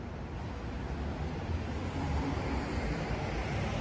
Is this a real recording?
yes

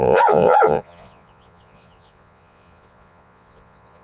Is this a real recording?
no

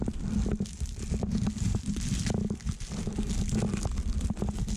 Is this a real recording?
yes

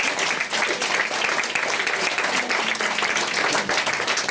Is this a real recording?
yes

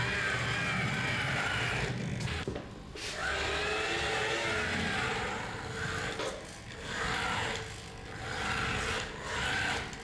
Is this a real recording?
yes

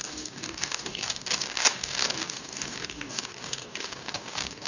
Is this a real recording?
no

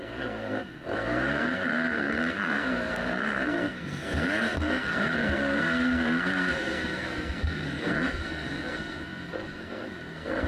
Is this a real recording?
no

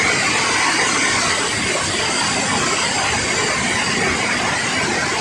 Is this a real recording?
yes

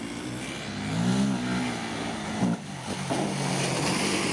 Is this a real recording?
yes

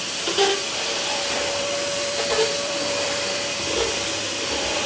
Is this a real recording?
no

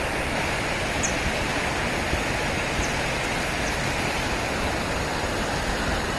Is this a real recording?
yes